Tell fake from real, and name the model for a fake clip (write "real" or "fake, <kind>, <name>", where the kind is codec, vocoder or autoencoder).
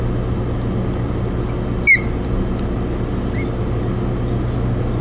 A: real